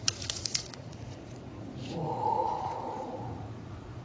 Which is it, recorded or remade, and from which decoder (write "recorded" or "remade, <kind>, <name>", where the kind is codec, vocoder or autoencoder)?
remade, vocoder, Vocos